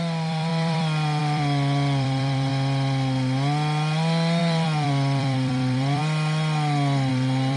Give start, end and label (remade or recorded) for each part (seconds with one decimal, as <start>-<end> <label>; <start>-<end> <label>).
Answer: 0.0-2.5 remade; 2.5-4.4 recorded; 4.4-6.0 remade; 6.0-7.1 recorded; 7.1-7.6 remade